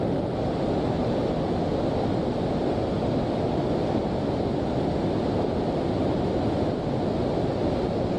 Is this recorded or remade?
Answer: recorded